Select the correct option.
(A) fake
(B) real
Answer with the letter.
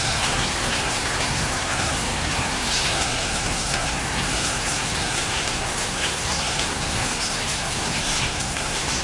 A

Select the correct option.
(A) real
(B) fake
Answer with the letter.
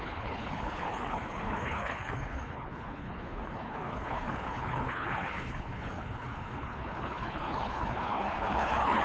B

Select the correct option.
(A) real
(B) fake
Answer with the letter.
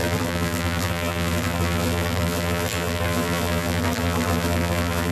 B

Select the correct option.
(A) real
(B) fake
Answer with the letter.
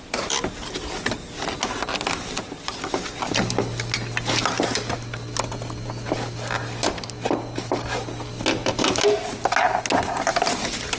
A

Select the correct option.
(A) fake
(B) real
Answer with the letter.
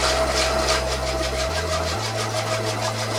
B